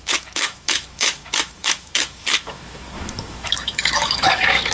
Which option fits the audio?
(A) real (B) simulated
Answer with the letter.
B